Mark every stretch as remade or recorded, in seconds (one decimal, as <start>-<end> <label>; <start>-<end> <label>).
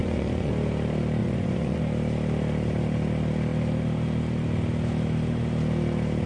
0.0-0.5 remade; 0.5-1.2 recorded; 1.2-1.8 remade; 1.8-6.3 recorded